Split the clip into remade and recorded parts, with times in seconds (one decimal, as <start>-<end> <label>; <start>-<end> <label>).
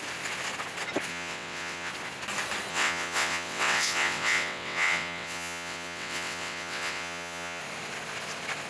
0.0-1.1 recorded; 1.1-1.9 remade; 1.9-2.7 recorded; 2.7-7.6 remade; 7.6-8.7 recorded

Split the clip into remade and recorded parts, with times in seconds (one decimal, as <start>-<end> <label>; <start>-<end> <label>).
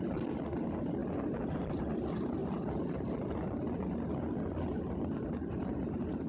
0.0-6.3 recorded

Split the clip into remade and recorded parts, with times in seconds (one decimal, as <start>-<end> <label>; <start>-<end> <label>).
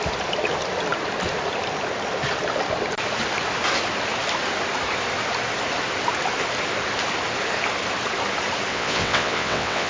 0.0-8.7 recorded; 8.7-9.9 remade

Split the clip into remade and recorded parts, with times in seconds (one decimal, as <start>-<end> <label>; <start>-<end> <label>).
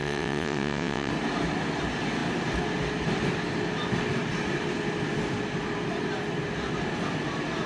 0.0-1.1 remade; 1.1-7.7 recorded